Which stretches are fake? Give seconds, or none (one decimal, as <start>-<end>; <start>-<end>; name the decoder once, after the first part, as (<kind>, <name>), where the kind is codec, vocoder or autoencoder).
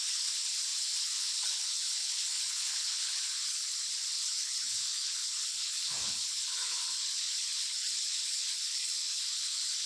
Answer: 0.0-9.9 (codec, HILCodec)